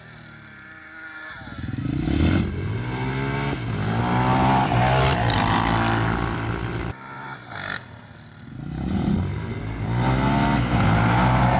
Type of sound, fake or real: real